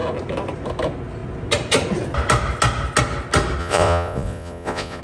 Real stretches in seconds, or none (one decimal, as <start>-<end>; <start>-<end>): 0.0-3.6